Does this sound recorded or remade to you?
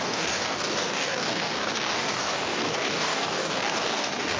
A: remade